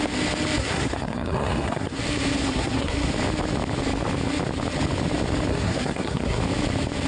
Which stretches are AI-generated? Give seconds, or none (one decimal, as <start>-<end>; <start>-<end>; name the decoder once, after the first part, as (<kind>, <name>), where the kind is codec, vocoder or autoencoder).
0.6-2.0 (codec, SNAC); 2.4-3.1; 5.5-6.4